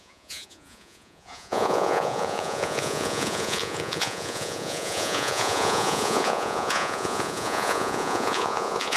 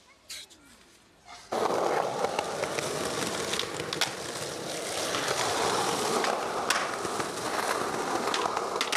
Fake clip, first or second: first